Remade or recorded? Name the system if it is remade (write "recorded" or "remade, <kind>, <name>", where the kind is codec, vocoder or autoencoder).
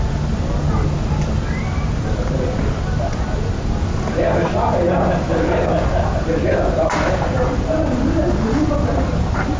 recorded